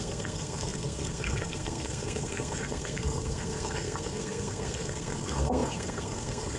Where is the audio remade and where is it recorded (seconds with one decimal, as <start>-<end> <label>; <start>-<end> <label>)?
0.0-6.6 remade

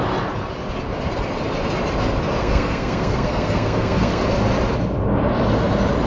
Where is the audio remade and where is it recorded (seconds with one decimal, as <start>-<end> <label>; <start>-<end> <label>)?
0.0-2.4 recorded; 2.4-4.2 remade; 4.2-6.1 recorded

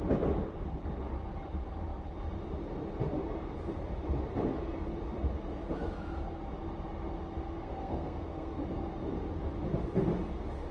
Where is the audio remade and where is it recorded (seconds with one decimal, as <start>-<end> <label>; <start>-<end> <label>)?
0.0-7.6 recorded; 7.6-8.6 remade; 8.6-10.7 recorded

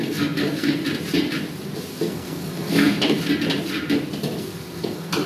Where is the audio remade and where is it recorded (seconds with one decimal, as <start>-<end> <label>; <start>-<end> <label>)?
0.0-0.8 remade; 0.8-1.9 recorded; 1.9-3.2 remade; 3.2-4.4 recorded; 4.4-5.3 remade

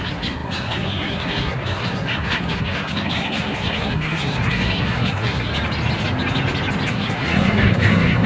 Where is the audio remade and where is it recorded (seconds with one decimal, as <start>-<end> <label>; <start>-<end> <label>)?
0.0-5.5 remade; 5.5-6.9 recorded; 6.9-8.3 remade

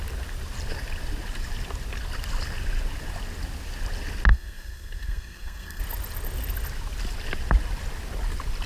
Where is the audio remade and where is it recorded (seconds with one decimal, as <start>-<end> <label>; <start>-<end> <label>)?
0.0-4.3 recorded; 4.3-5.8 remade; 5.8-8.7 recorded

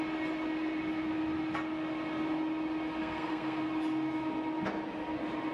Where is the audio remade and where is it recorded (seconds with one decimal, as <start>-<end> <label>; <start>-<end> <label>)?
0.0-3.0 recorded; 3.0-3.6 remade; 3.6-5.5 recorded

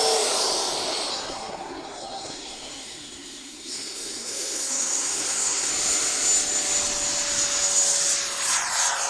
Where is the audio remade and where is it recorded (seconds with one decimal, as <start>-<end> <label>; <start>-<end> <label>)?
0.0-1.1 recorded; 1.1-5.7 remade; 5.7-9.1 recorded